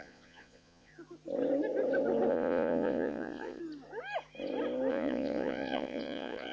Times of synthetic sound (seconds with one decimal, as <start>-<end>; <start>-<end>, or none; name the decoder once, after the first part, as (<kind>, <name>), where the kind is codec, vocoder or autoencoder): 0.0-0.9 (vocoder, Vocos); 2.3-3.6; 4.9-6.5